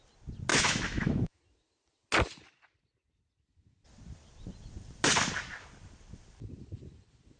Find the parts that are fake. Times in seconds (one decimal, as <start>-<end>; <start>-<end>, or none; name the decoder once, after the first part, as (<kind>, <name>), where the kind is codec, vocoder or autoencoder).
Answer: 0.5-1.4 (autoencoder, DAC-VAE)